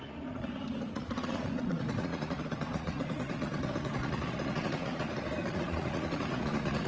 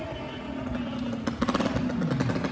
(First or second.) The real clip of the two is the second